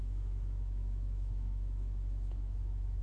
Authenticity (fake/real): fake